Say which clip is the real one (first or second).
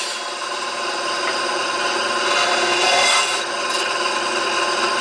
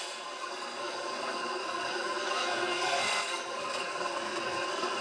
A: first